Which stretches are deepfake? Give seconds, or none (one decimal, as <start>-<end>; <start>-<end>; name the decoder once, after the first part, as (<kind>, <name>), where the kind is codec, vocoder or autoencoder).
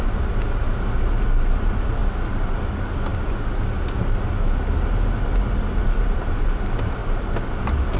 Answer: none